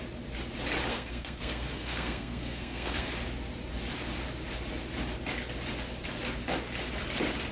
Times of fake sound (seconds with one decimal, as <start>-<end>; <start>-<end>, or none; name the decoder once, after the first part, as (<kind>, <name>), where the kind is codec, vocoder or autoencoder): 0.9-3.1 (codec, SNAC)